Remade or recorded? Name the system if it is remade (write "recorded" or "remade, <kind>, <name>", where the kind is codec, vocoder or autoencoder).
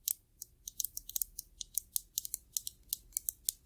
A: recorded